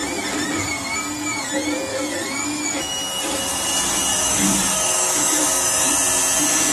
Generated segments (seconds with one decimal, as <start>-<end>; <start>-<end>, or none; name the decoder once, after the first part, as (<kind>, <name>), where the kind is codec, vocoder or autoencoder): 1.9-2.8 (autoencoder, DAC-VAE); 4.1-5.9